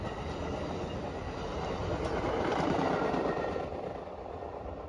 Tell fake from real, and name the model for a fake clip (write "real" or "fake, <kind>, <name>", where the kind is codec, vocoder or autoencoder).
real